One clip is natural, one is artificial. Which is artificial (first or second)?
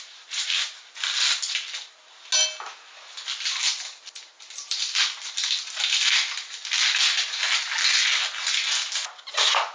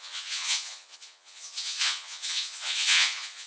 second